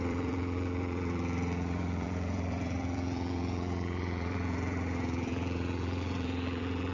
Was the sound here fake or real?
fake